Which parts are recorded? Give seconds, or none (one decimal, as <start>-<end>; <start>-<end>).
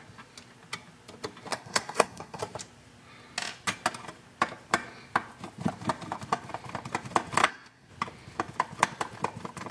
0.0-1.5; 2.4-7.4; 7.9-9.7